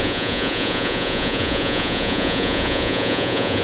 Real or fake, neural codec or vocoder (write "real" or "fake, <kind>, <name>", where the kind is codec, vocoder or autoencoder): fake, vocoder, Vocos